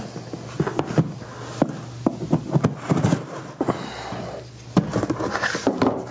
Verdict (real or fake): real